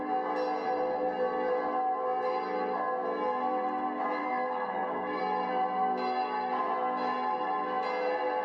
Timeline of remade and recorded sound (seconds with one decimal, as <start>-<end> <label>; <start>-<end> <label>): 0.0-4.2 recorded; 4.2-5.2 remade; 5.2-8.4 recorded